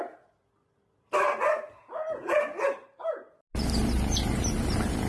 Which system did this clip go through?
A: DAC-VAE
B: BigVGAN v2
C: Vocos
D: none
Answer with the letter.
D